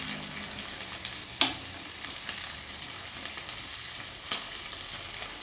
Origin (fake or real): real